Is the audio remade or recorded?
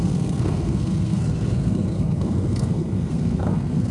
remade